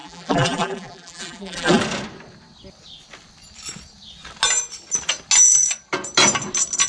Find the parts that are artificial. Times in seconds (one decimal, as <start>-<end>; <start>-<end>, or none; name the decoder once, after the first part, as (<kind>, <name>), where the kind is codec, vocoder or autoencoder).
0.0-1.8 (vocoder, BigVGAN v2)

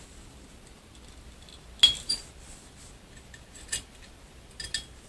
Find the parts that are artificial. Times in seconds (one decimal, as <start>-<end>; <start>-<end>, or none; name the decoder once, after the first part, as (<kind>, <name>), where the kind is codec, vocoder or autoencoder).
none

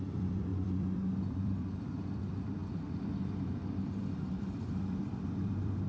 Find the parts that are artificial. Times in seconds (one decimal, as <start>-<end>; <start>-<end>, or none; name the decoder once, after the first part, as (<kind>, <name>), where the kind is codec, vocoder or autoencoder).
0.0-5.9 (vocoder, BigVGAN v2)

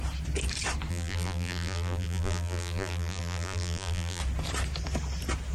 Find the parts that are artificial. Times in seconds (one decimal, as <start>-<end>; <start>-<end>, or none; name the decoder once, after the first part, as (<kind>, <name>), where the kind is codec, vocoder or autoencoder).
0.9-4.2 (vocoder, BigVGAN v2)

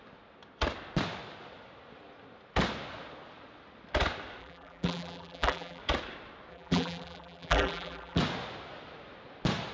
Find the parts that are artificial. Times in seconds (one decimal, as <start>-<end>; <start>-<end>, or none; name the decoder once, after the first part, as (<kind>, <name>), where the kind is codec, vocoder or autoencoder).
4.4-5.8 (vocoder, BigVGAN v2); 6.5-8.2

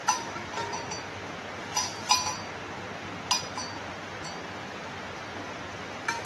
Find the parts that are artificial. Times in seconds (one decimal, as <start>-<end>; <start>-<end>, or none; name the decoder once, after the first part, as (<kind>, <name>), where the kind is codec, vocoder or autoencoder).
none